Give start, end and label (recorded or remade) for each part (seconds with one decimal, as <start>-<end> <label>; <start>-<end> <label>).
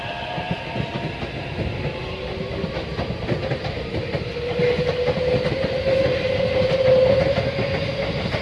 0.0-3.5 recorded; 3.5-4.0 remade; 4.0-8.4 recorded